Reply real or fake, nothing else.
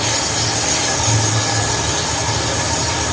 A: real